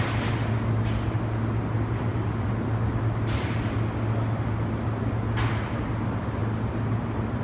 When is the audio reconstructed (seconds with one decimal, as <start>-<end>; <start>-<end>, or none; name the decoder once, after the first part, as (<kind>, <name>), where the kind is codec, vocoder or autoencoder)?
none